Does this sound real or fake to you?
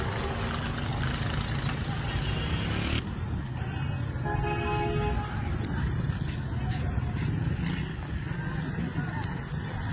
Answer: real